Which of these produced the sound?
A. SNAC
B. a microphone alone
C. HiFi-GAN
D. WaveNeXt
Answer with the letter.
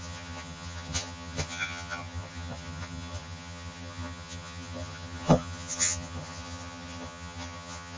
C